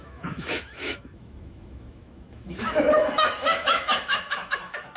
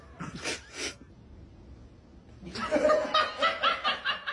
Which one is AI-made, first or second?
first